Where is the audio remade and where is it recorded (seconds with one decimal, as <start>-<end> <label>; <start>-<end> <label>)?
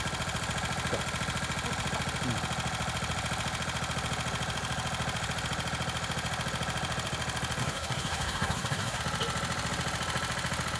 0.0-7.6 recorded; 7.6-9.0 remade; 9.0-10.8 recorded